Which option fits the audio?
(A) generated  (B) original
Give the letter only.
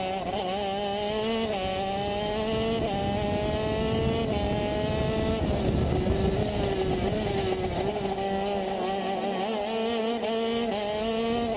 B